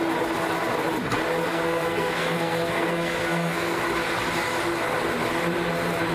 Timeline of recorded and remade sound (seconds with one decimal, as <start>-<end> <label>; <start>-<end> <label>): 0.0-1.5 recorded; 1.5-3.8 remade; 3.8-6.1 recorded